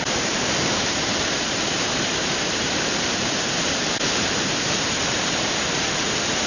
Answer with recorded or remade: remade